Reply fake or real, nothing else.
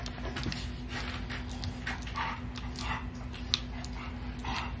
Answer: real